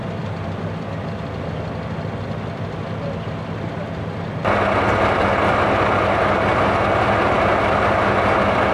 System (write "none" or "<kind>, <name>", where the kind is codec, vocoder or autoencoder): none